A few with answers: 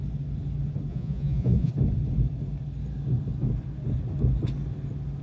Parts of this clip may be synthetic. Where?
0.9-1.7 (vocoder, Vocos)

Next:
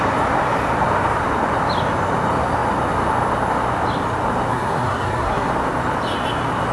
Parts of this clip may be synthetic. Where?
4.5-5.5 (codec, SNAC)

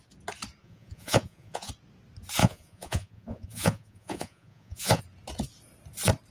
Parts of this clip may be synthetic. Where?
0.6-1.7 (vocoder, Vocos); 2.4-5.0